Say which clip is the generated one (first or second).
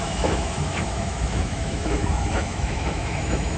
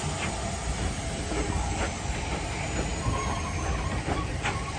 first